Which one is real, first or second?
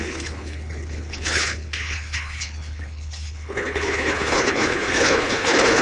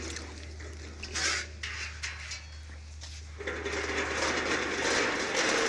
second